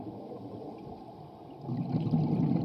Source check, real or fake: real